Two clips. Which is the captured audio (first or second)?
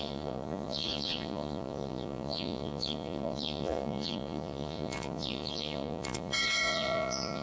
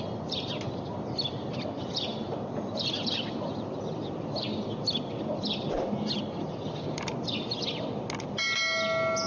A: second